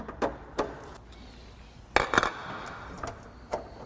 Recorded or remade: recorded